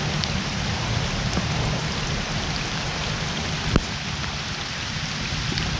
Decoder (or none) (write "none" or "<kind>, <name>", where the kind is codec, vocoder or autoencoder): none